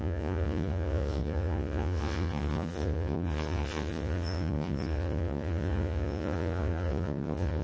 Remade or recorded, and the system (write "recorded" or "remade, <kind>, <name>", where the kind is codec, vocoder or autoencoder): remade, vocoder, Vocos